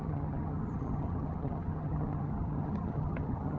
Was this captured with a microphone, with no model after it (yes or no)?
no